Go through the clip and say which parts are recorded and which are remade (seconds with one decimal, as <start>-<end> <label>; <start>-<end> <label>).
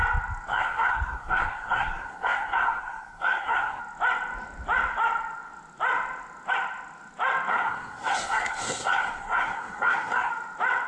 0.0-0.5 recorded; 0.5-3.8 remade; 3.8-7.5 recorded; 7.5-10.3 remade; 10.3-10.9 recorded